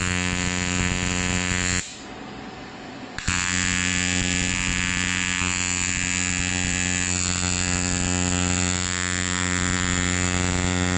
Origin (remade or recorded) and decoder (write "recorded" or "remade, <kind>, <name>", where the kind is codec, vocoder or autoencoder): recorded